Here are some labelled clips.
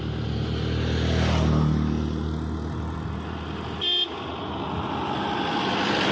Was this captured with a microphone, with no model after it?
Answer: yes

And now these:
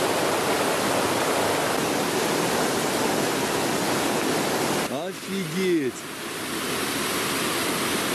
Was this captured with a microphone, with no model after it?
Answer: yes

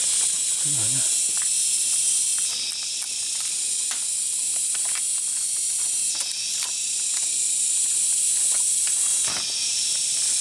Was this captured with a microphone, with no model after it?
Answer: yes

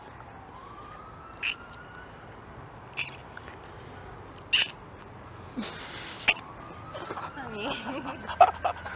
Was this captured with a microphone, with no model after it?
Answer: yes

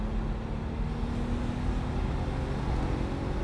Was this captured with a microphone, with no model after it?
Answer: yes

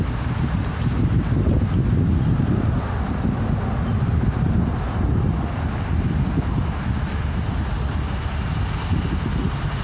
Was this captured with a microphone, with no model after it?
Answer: yes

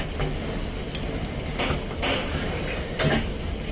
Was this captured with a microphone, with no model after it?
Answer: yes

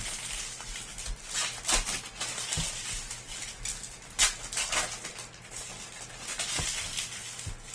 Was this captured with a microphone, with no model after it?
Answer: yes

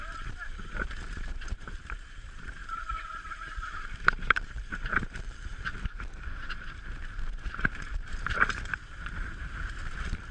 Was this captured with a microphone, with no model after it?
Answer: no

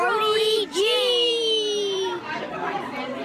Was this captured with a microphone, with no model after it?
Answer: no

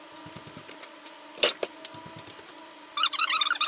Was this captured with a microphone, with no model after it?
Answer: yes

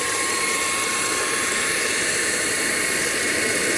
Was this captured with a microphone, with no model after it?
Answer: no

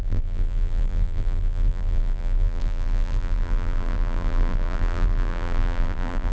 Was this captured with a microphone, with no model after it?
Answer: no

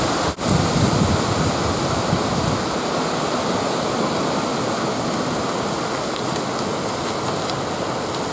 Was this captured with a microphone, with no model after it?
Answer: yes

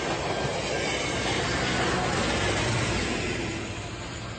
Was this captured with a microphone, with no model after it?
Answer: yes